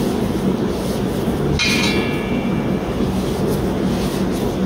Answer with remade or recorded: recorded